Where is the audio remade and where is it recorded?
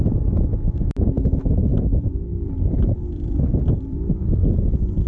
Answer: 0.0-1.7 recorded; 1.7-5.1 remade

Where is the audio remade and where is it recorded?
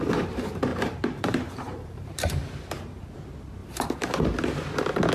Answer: 0.0-0.7 recorded; 0.7-2.8 remade; 2.8-3.6 recorded; 3.6-4.2 remade; 4.2-5.1 recorded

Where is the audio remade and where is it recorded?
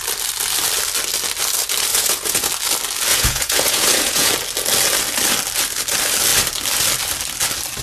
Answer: 0.0-1.9 recorded; 1.9-2.5 remade; 2.5-3.1 recorded; 3.1-4.3 remade; 4.3-7.8 recorded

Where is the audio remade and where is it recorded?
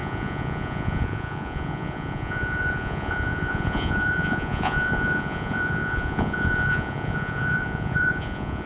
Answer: 0.0-8.7 remade